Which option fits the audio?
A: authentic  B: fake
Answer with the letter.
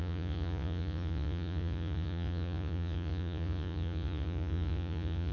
B